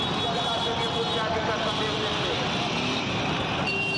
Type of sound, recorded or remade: recorded